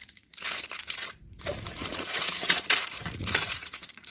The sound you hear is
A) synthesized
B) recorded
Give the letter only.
A